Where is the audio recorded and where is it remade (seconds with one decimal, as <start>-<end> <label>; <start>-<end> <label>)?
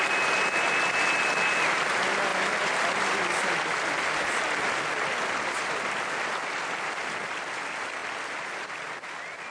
0.0-9.5 recorded